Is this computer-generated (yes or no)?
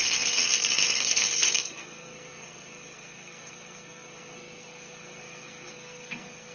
yes